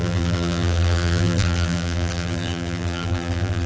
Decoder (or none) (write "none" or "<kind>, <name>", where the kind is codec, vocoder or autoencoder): vocoder, BigVGAN v2